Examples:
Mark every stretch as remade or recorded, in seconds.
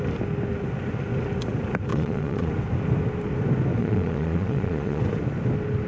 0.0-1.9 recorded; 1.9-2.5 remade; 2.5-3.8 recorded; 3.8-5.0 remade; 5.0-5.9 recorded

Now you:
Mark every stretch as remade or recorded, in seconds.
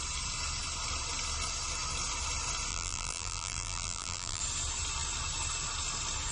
0.0-2.7 recorded; 2.7-4.4 remade; 4.4-6.3 recorded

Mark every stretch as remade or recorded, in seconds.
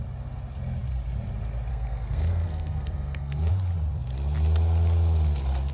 0.0-1.7 recorded; 1.7-3.5 remade; 3.5-5.7 recorded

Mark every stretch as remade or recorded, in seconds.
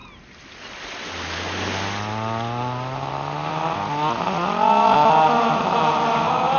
0.0-6.6 recorded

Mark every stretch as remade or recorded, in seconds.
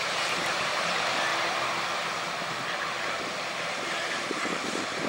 0.0-1.3 remade; 1.3-3.6 recorded; 3.6-5.1 remade